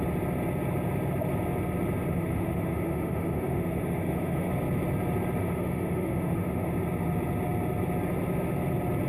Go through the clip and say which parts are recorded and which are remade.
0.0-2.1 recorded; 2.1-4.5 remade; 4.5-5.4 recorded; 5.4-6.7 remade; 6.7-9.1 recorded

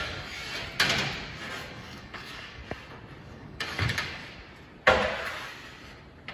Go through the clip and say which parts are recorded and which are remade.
0.0-0.4 remade; 0.4-1.7 recorded; 1.7-2.6 remade; 2.6-3.2 recorded; 3.2-4.2 remade; 4.2-6.3 recorded

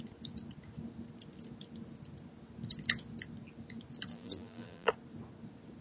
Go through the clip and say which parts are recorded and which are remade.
0.0-4.1 recorded; 4.1-4.9 remade; 4.9-5.8 recorded

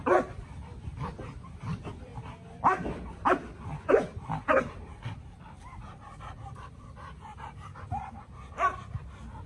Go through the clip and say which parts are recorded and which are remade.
0.0-0.5 remade; 0.5-1.5 recorded; 1.5-2.1 remade; 2.1-5.1 recorded; 5.1-7.7 remade; 7.7-8.5 recorded; 8.5-9.5 remade

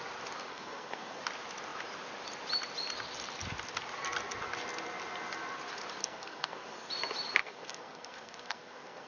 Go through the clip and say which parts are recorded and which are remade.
0.0-0.5 recorded; 0.5-1.2 remade; 1.2-6.0 recorded; 6.0-6.9 remade; 6.9-7.4 recorded; 7.4-9.1 remade

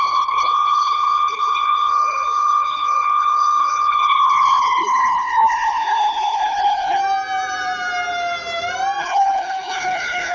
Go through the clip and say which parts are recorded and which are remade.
0.0-7.0 remade; 7.0-9.0 recorded; 9.0-10.3 remade

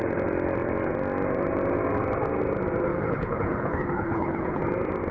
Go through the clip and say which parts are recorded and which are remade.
0.0-2.9 recorded; 2.9-4.6 remade; 4.6-5.1 recorded

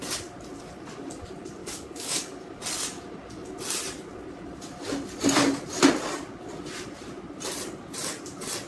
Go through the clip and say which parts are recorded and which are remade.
0.0-1.6 recorded; 1.6-2.6 remade; 2.6-8.7 recorded